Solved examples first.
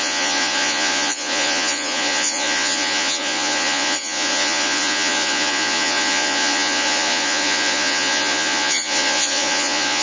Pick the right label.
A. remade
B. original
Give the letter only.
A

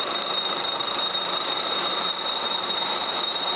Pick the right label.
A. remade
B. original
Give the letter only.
A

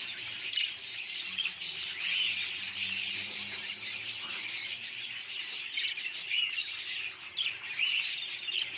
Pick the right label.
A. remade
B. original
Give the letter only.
A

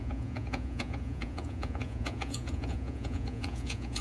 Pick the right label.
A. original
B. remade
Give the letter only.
B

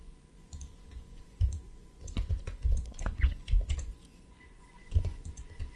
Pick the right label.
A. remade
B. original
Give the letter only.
A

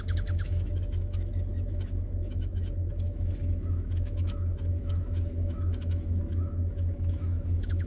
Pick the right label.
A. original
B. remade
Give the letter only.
B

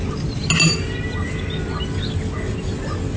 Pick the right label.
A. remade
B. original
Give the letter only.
B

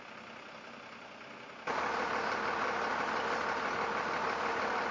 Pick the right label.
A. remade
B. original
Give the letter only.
B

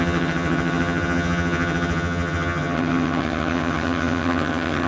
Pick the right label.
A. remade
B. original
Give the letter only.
A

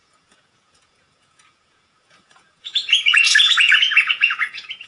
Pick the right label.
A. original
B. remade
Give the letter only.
B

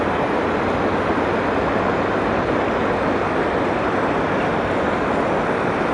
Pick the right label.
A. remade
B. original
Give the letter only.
B